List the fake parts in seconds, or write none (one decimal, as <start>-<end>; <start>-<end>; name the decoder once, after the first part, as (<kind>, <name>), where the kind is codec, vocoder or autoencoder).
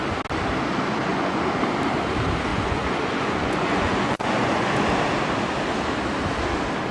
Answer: 1.1-1.6 (vocoder, Vocos); 2.5-4.8